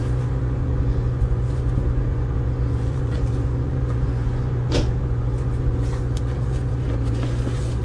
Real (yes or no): no